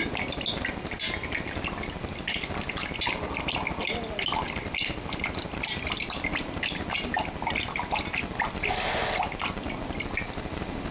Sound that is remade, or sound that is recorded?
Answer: recorded